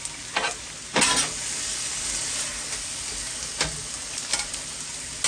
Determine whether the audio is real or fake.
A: real